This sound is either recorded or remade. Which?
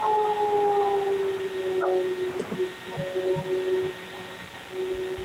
recorded